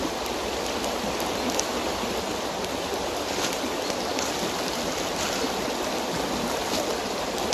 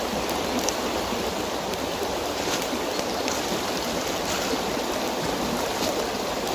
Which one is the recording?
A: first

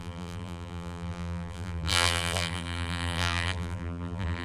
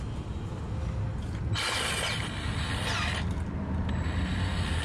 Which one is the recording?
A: second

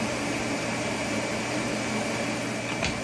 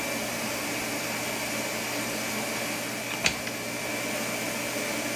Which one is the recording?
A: second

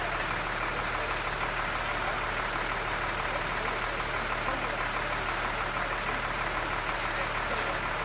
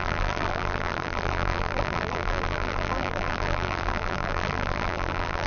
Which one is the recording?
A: first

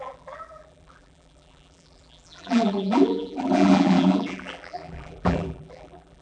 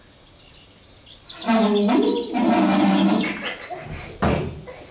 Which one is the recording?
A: second